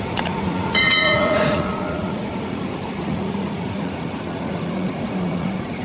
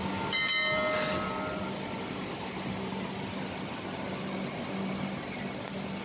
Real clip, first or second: second